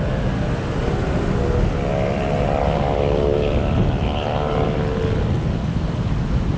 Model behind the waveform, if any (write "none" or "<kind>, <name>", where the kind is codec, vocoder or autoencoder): none